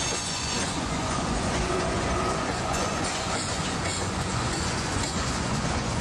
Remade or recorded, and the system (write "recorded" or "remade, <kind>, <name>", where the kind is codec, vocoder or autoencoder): remade, vocoder, Vocos